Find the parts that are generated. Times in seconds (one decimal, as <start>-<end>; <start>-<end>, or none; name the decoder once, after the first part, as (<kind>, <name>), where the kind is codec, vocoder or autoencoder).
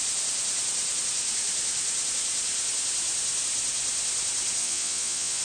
4.6-5.4 (vocoder, Vocos)